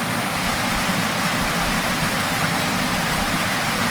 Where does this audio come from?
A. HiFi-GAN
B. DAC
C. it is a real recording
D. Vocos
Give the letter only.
C